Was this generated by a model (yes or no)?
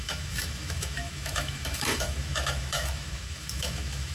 yes